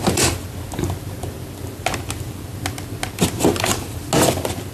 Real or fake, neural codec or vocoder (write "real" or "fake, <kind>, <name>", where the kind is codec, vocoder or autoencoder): real